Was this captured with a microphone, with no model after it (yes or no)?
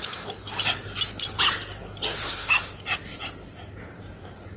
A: yes